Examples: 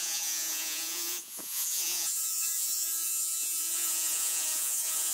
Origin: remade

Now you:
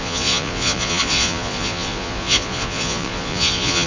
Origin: remade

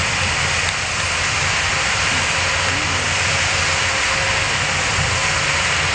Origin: recorded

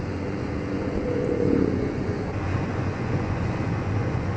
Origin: remade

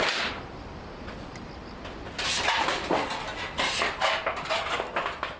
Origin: recorded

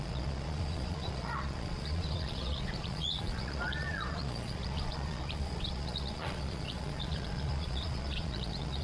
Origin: remade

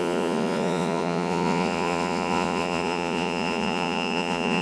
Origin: remade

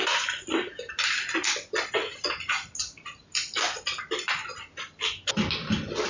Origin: recorded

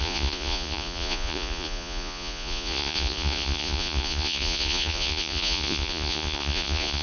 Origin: remade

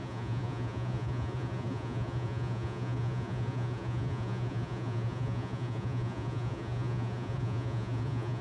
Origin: remade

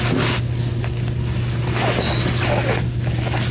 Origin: recorded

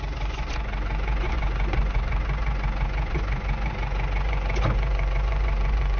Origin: remade